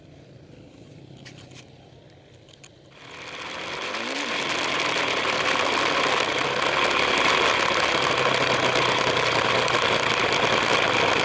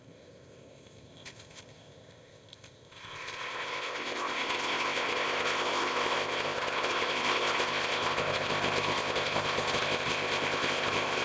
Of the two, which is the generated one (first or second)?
second